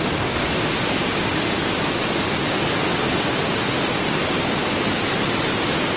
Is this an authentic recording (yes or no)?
yes